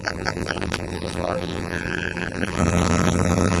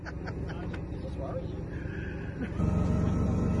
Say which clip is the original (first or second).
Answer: second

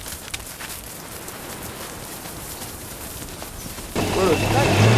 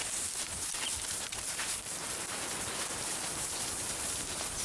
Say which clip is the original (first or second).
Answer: first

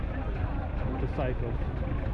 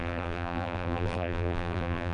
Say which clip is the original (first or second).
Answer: first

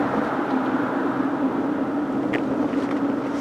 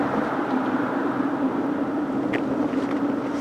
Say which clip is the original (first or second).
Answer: first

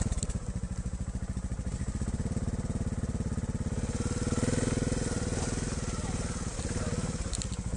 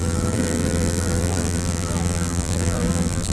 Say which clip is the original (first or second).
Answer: first